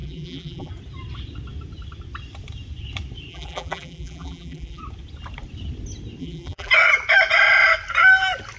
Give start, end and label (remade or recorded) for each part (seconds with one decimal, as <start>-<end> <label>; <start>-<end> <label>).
0.0-0.7 remade; 0.7-3.3 recorded; 3.3-4.8 remade; 4.8-6.2 recorded; 6.2-6.7 remade; 6.7-8.6 recorded